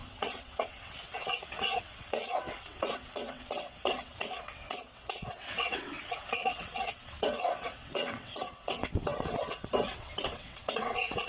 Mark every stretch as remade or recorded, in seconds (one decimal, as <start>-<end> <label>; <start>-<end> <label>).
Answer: 0.0-11.3 remade